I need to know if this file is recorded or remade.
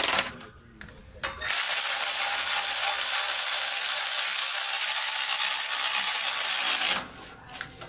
recorded